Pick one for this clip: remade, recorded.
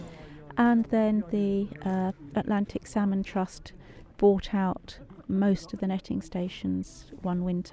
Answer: recorded